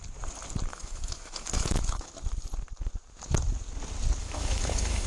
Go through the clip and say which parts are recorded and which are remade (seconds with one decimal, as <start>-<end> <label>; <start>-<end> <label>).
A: 0.0-0.7 recorded; 0.7-2.1 remade; 2.1-4.2 recorded; 4.2-5.1 remade